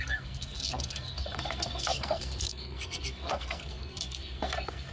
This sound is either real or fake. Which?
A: fake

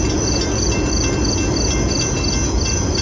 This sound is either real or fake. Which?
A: real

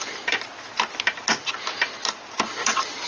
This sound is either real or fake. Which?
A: real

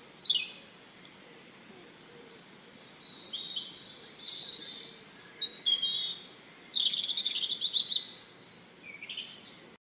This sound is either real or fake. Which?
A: real